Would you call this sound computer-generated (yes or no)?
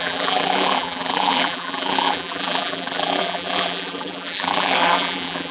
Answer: yes